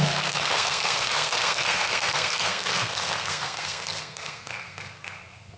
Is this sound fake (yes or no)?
yes